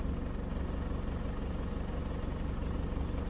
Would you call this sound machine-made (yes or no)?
no